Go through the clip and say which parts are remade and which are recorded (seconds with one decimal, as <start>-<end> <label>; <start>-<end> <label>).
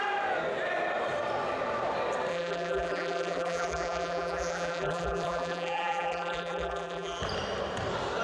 0.0-2.3 recorded; 2.3-7.2 remade; 7.2-8.2 recorded